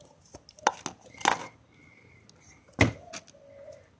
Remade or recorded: recorded